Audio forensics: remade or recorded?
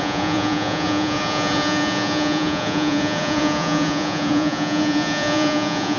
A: remade